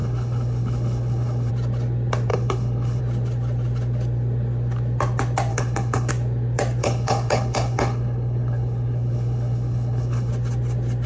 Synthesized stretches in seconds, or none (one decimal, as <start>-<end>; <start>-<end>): 0.0-1.5; 2.3-3.0; 5.5-6.1; 6.8-10.3